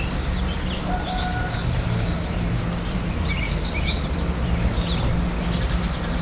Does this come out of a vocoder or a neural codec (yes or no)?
no